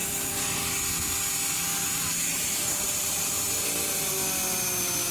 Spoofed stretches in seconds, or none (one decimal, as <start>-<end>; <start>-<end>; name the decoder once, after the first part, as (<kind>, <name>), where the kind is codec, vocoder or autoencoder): 0.0-0.6 (vocoder, BigVGAN v2); 2.3-3.3